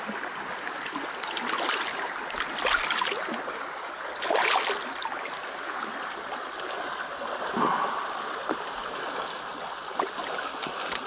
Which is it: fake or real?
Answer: real